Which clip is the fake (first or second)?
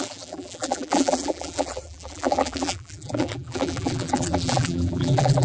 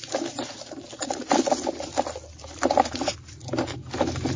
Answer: first